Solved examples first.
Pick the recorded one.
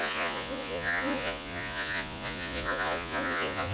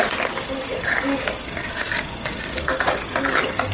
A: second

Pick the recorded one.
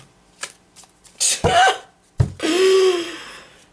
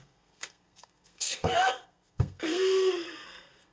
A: first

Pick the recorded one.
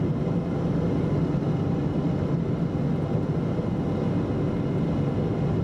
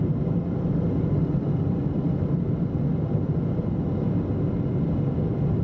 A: first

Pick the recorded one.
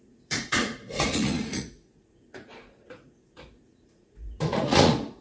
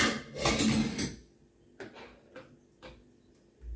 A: second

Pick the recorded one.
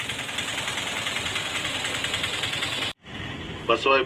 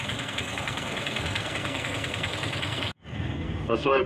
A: first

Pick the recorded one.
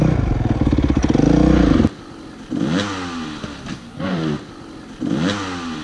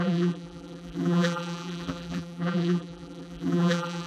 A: first